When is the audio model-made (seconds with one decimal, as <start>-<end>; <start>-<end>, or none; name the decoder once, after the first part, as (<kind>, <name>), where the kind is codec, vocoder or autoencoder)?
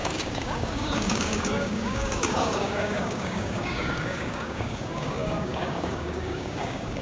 0.0-7.0 (codec, DAC)